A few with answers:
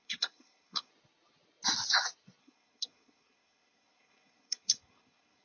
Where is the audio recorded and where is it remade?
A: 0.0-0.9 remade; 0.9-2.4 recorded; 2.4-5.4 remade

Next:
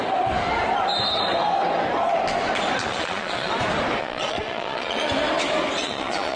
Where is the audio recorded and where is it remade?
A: 0.0-2.8 recorded; 2.8-3.5 remade; 3.5-4.0 recorded; 4.0-5.1 remade; 5.1-5.8 recorded; 5.8-6.4 remade

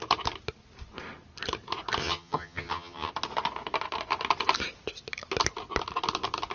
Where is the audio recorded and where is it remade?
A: 0.0-2.0 recorded; 2.0-3.1 remade; 3.1-6.5 recorded